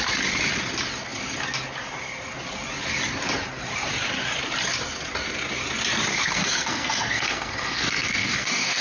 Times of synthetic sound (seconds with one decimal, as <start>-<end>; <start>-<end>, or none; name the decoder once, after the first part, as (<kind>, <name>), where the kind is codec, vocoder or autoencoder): 6.1-8.8 (codec, SNAC)